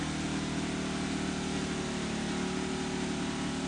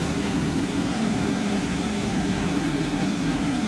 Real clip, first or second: first